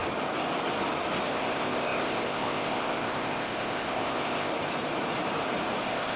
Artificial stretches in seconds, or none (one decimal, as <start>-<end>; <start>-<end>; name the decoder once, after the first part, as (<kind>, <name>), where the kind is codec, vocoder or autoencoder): 1.3-4.5 (codec, ZipCodec); 5.8-6.2